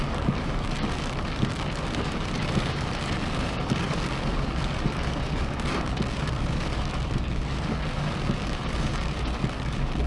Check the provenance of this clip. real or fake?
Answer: fake